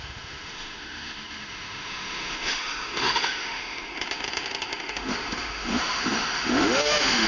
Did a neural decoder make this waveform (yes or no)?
yes